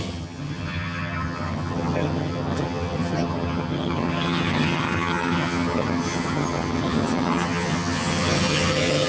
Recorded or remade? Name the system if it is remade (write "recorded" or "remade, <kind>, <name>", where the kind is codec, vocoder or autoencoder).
remade, vocoder, HiFi-GAN